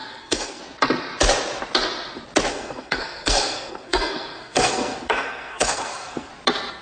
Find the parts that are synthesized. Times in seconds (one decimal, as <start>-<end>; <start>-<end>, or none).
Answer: 0.0-0.6; 2.5-6.3